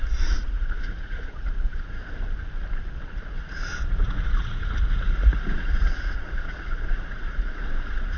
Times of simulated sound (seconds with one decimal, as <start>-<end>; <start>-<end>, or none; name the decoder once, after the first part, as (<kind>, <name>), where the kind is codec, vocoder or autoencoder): 0.0-2.0 (vocoder, Vocos); 3.1-8.2